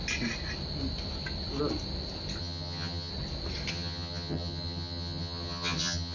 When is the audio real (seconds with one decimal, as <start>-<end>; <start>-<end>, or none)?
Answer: 0.0-2.4; 3.1-3.7